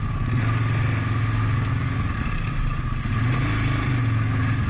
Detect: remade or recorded recorded